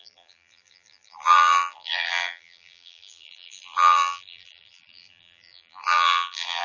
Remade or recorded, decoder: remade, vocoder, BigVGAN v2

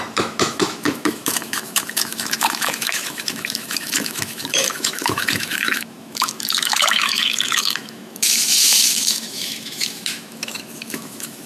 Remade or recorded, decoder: remade, autoencoder, DAC-VAE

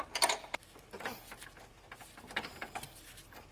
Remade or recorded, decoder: recorded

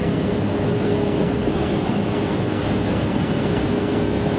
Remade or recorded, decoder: remade, codec, SNAC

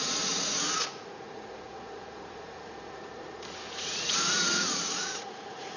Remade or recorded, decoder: remade, vocoder, Vocos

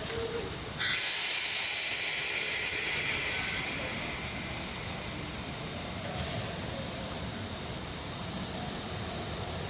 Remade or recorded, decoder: recorded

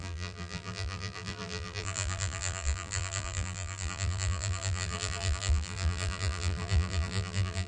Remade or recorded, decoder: remade, vocoder, BigVGAN v2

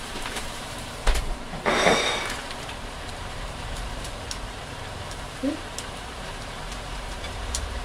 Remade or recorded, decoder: remade, vocoder, BigVGAN v2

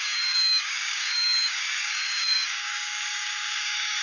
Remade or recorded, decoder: remade, codec, DAC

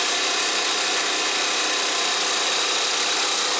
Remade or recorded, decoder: recorded